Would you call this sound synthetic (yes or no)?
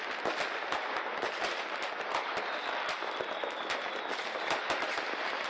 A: no